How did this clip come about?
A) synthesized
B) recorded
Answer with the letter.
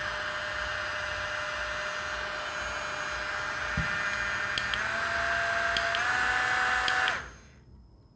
B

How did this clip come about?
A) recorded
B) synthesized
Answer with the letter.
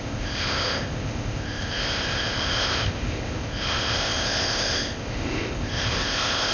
B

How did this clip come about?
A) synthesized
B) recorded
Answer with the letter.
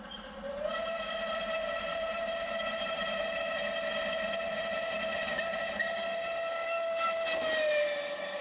B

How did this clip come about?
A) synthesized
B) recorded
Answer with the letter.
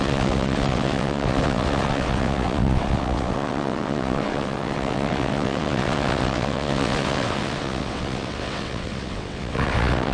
A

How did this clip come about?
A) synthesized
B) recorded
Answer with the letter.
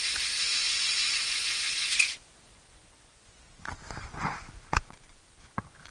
A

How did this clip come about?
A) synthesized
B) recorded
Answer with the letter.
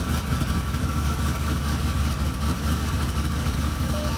A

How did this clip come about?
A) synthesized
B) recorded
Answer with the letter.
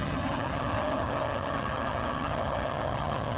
A